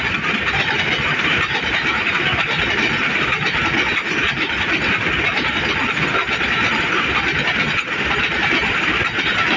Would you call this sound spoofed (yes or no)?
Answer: no